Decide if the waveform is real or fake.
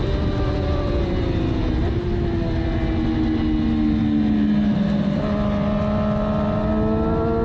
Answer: real